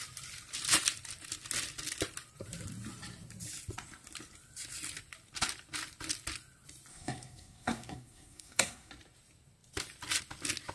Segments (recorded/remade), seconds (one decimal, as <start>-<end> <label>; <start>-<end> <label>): 0.0-6.9 recorded; 6.9-8.9 remade; 8.9-10.7 recorded